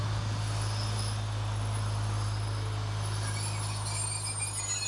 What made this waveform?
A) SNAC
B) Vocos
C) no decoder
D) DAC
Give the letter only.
C